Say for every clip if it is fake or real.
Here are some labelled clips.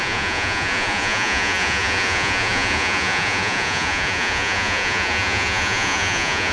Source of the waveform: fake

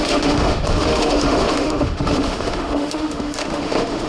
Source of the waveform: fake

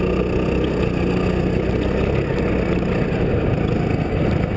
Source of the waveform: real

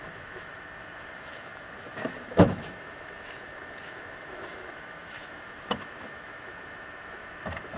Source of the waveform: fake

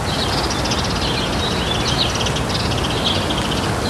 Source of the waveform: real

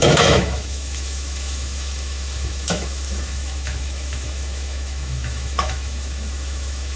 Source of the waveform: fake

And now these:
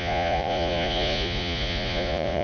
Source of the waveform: fake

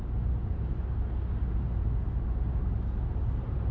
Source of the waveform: real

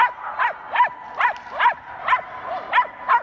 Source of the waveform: real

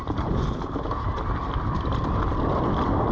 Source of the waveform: real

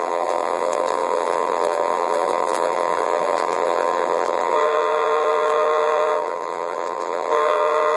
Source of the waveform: fake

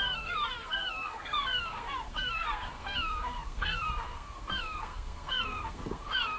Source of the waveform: fake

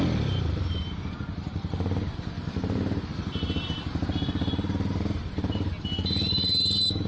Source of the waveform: real